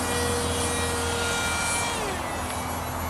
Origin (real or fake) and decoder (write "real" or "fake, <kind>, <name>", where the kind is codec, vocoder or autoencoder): real